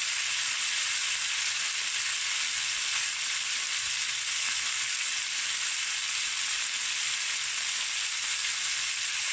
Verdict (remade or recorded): recorded